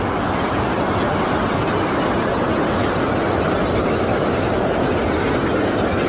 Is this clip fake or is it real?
real